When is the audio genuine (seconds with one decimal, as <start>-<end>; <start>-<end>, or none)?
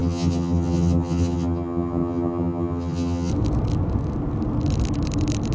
3.3-5.5